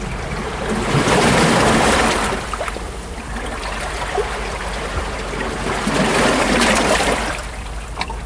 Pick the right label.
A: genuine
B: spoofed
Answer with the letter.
B